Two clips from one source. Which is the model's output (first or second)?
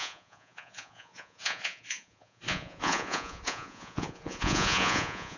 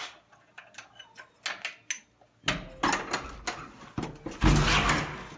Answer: first